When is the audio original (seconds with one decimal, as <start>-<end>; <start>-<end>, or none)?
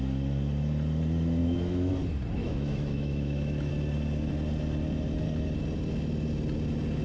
0.0-1.4; 1.9-2.4; 3.7-7.0